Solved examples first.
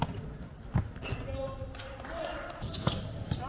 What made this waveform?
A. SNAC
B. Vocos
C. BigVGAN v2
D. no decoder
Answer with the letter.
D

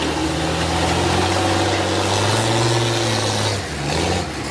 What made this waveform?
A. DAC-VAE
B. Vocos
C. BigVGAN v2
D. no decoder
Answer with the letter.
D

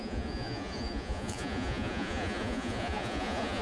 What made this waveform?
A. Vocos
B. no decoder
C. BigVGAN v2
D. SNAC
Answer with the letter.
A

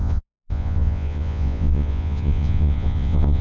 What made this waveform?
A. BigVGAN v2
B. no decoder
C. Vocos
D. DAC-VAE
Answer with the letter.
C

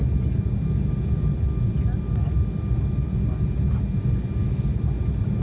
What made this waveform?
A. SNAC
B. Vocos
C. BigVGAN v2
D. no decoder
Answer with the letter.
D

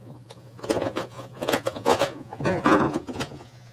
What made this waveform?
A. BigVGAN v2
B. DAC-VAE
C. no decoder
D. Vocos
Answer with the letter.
D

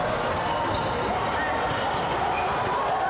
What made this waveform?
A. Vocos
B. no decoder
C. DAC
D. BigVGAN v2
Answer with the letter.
B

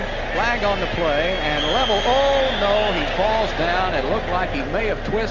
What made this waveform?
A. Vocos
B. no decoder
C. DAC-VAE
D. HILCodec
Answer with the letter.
B